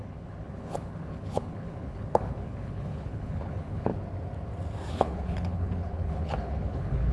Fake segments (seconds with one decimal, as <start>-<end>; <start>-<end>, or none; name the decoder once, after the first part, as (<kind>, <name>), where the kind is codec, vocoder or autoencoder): 0.0-3.9 (codec, HILCodec); 4.9-7.1